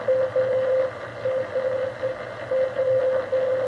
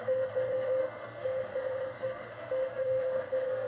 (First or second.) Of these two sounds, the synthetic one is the second